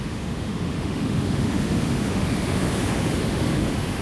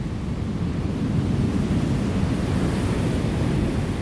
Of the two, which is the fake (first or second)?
first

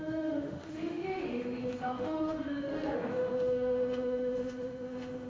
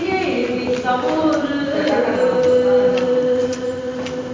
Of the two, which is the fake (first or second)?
first